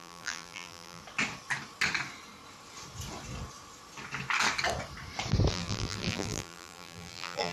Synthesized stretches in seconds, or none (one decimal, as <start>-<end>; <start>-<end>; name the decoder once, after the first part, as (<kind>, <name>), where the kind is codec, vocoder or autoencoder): 0.0-1.0 (vocoder, BigVGAN v2); 5.5-7.5